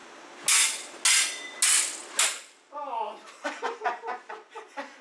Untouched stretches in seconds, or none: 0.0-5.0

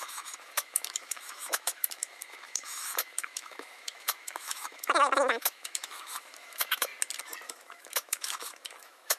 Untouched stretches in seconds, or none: 6.9-7.5

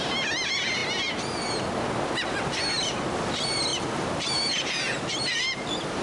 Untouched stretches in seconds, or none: 0.0-6.0

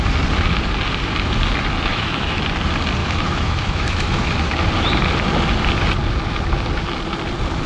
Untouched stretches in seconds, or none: 0.0-1.9; 2.4-3.0; 4.3-7.7

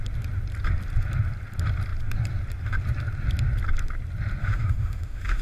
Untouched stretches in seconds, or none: 0.0-4.4

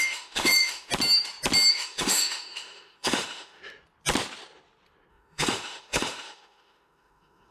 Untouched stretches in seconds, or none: 0.9-1.7; 3.6-5.1